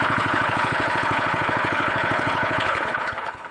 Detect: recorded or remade remade